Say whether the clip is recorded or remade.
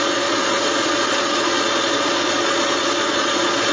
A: remade